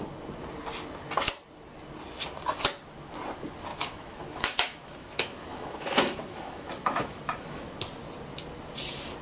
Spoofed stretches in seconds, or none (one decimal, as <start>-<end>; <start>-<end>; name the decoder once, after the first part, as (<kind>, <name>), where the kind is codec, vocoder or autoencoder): 3.7-7.7 (autoencoder, DAC-VAE)